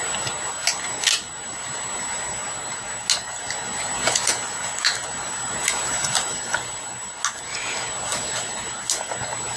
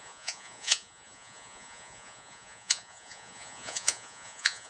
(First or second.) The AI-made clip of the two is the second